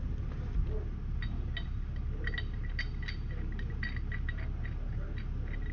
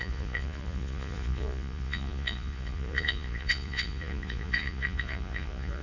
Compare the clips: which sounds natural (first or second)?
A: first